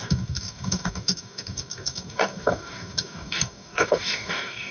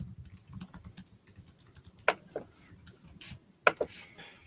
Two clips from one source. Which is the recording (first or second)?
second